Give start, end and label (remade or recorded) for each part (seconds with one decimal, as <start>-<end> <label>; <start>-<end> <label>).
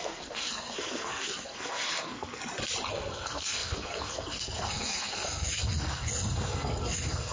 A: 0.0-2.4 remade; 2.4-2.9 recorded; 2.9-7.3 remade